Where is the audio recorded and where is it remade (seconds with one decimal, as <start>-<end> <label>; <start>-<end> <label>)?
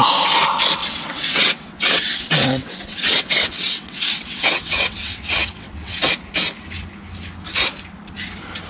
0.0-0.8 recorded; 0.8-6.0 remade; 6.0-8.7 recorded